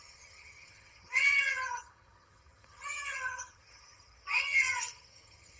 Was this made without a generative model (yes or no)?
no